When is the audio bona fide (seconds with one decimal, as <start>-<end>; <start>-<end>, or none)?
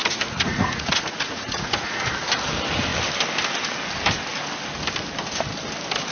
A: 2.1-6.1